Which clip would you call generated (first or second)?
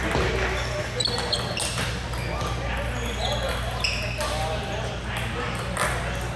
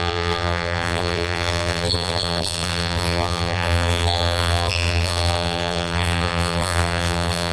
second